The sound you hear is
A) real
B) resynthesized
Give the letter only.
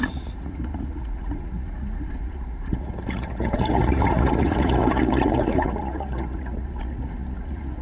B